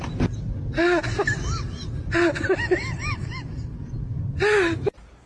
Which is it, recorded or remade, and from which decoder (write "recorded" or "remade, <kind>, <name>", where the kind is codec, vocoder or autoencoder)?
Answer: recorded